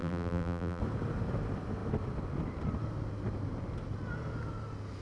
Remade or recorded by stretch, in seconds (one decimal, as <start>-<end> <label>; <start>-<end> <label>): 0.0-0.8 remade; 0.8-5.0 recorded